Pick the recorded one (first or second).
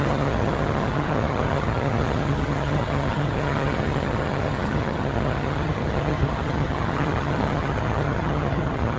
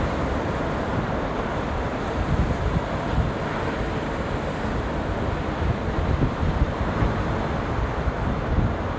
second